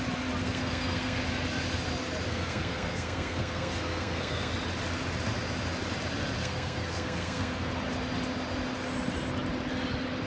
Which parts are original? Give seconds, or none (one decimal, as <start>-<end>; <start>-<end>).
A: 0.0-0.4; 1.2-2.3; 4.5-6.4; 7.7-10.3